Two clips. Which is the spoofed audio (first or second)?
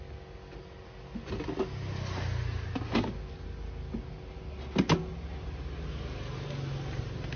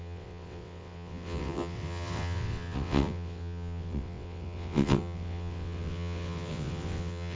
second